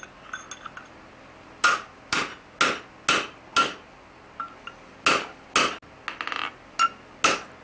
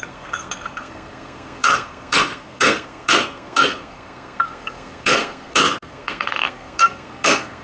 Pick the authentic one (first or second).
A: first